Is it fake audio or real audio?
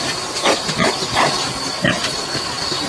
real